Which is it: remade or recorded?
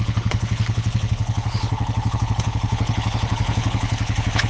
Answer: remade